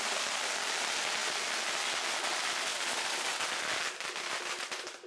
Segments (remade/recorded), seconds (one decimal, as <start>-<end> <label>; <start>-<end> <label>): 0.0-5.1 recorded